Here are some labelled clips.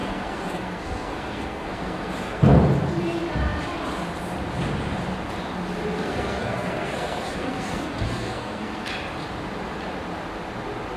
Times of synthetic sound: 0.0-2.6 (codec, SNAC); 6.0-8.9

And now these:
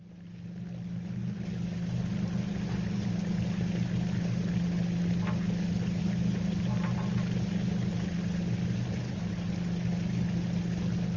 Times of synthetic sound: none

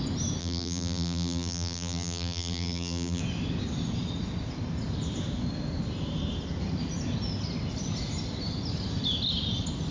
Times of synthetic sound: 0.4-3.2 (vocoder, BigVGAN v2)

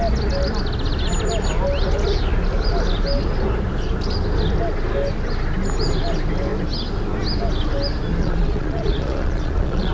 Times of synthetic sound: 8.2-9.9 (vocoder, Vocos)

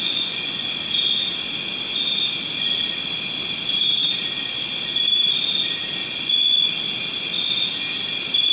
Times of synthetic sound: 0.0-0.7 (vocoder, Vocos); 6.0-6.7